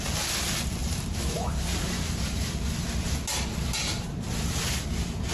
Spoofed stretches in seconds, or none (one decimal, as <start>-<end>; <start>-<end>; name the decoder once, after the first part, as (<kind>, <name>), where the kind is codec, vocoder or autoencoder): 0.8-2.7 (vocoder, BigVGAN v2); 3.8-4.3